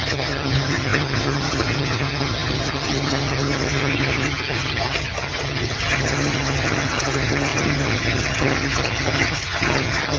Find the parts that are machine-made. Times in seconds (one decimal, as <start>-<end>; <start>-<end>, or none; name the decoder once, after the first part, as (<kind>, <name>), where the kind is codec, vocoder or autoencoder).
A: 0.0-10.2 (vocoder, HiFi-GAN)